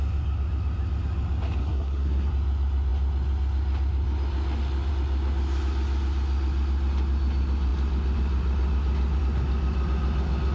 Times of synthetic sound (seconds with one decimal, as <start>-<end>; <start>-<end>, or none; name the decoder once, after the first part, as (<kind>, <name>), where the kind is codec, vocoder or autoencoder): 1.6-2.3 (codec, SNAC)